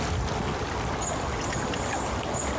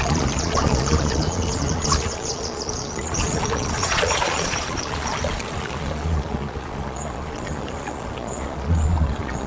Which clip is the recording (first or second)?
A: first